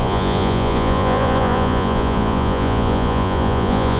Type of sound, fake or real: fake